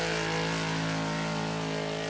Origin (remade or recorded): recorded